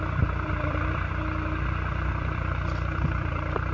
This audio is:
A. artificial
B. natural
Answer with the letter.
A